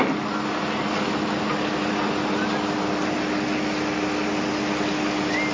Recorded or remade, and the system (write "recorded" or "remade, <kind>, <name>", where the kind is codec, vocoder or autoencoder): recorded